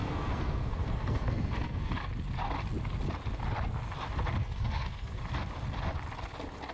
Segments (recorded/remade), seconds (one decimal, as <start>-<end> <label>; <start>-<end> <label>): 0.0-1.9 remade; 1.9-4.4 recorded; 4.4-5.2 remade; 5.2-6.7 recorded